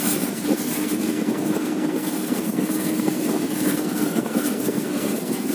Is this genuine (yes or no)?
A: no